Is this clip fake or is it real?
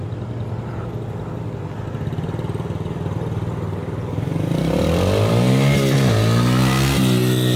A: real